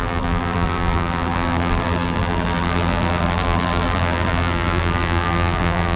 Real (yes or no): no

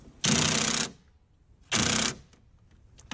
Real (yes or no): yes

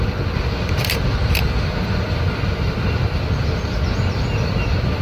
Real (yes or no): yes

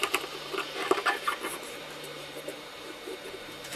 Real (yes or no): no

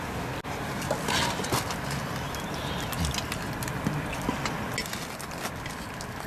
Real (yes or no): yes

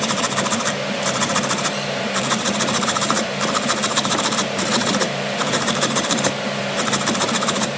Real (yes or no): no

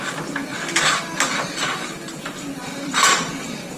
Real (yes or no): no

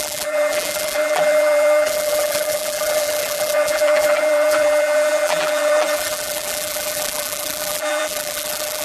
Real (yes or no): no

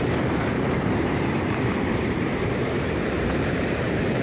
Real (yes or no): no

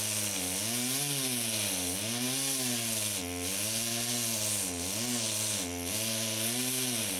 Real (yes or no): yes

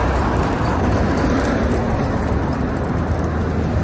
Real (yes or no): yes